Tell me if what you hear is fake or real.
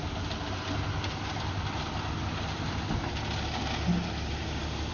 real